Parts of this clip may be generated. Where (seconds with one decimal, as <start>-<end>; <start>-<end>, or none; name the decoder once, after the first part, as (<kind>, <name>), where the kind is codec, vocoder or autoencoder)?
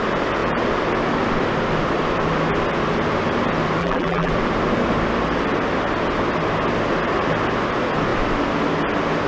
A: 3.8-4.3 (vocoder, BigVGAN v2)